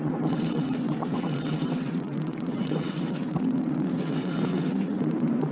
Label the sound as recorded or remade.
remade